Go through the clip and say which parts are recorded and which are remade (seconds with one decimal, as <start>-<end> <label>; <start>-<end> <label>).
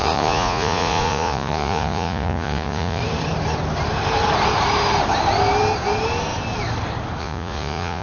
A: 0.0-3.0 remade; 3.0-7.2 recorded; 7.2-8.0 remade